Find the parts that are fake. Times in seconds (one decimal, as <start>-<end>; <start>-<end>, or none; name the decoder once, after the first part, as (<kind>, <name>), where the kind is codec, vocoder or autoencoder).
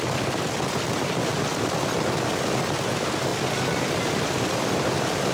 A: none